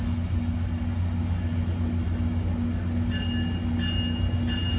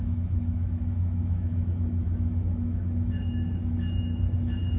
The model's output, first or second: second